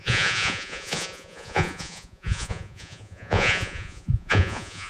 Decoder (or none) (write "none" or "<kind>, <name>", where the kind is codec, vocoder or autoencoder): vocoder, Vocos